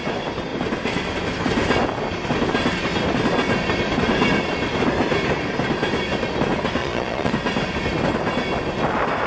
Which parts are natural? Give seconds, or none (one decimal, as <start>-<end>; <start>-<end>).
0.0-6.8; 7.3-9.3